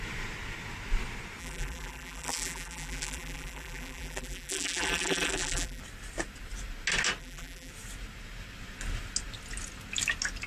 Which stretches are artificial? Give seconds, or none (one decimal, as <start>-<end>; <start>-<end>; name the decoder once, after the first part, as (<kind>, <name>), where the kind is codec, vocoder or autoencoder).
1.4-5.8 (vocoder, BigVGAN v2); 7.2-7.7